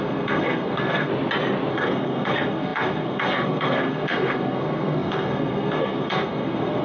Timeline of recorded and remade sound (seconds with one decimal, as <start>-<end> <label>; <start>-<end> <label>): 0.0-1.1 remade; 1.1-1.7 recorded; 1.7-6.8 remade